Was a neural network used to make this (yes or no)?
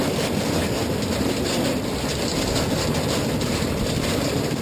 no